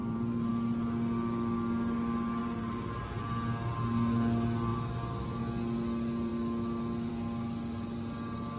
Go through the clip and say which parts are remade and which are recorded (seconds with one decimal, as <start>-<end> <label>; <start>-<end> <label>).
0.0-0.5 remade; 0.5-2.4 recorded; 2.4-3.2 remade; 3.2-4.7 recorded; 4.7-5.4 remade; 5.4-8.6 recorded

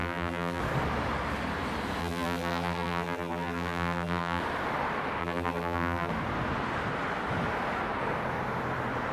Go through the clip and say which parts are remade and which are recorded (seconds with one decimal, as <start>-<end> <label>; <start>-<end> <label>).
0.0-0.6 remade; 0.6-2.0 recorded; 2.0-4.4 remade; 4.4-5.2 recorded; 5.2-6.1 remade; 6.1-9.1 recorded

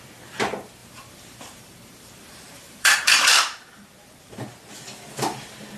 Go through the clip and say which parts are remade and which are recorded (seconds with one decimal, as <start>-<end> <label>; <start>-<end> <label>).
0.0-0.8 recorded; 0.8-4.3 remade; 4.3-5.8 recorded

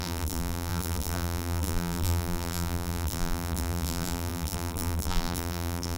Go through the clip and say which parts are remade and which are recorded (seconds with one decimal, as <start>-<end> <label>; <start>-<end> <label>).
0.0-6.0 remade

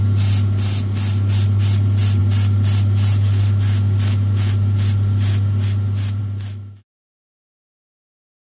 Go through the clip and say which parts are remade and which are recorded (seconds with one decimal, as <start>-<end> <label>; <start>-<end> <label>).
0.0-8.6 recorded